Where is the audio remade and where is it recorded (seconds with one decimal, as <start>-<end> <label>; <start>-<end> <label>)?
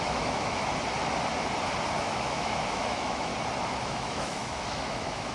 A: 0.0-0.7 remade; 0.7-2.0 recorded; 2.0-3.3 remade; 3.3-3.8 recorded; 3.8-5.3 remade